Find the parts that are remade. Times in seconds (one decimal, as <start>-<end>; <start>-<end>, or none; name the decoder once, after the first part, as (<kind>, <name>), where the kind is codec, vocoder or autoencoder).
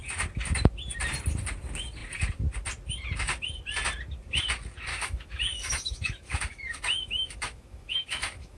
4.9-8.6 (autoencoder, DAC-VAE)